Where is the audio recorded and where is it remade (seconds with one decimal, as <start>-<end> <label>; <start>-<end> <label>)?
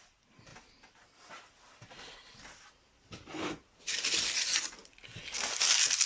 0.0-6.1 recorded